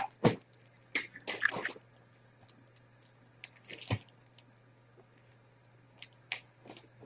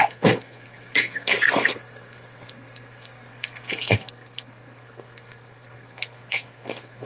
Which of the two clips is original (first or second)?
first